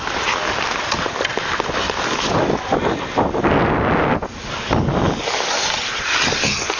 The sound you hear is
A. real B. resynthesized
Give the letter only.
A